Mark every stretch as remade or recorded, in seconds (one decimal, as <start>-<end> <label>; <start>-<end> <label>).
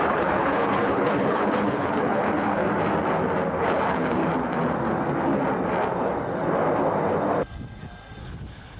0.0-2.6 remade; 2.6-3.6 recorded; 3.6-4.2 remade; 4.2-8.2 recorded; 8.2-8.8 remade